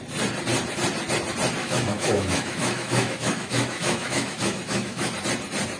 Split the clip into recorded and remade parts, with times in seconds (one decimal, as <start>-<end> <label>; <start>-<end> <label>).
0.0-1.6 recorded; 1.6-5.1 remade; 5.1-5.8 recorded